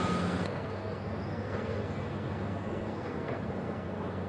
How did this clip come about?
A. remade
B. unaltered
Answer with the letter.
A